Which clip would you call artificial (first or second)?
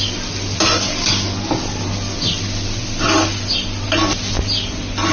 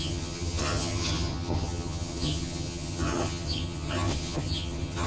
second